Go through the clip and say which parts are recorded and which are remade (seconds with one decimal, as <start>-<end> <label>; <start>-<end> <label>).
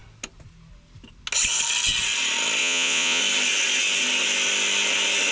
0.0-2.6 recorded; 2.6-3.2 remade; 3.2-5.3 recorded